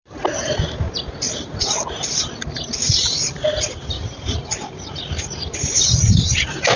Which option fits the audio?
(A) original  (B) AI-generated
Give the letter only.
A